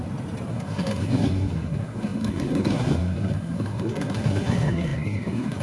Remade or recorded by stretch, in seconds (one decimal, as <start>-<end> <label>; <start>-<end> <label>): 0.0-0.5 recorded; 0.5-5.6 remade